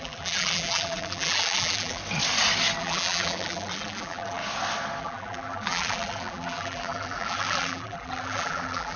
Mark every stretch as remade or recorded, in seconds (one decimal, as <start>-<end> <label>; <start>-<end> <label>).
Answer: 0.0-2.0 remade; 2.0-2.8 recorded; 2.8-4.4 remade; 4.4-5.0 recorded; 5.0-9.0 remade